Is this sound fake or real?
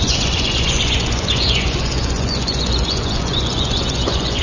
fake